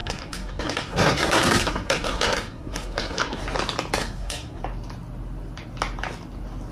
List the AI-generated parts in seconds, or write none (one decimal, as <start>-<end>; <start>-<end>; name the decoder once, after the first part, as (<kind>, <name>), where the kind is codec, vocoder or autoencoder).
0.0-3.4 (codec, SNAC); 4.0-4.6